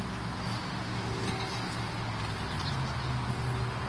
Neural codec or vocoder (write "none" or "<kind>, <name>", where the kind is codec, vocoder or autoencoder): none